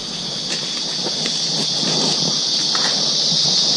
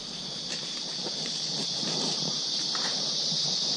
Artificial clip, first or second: second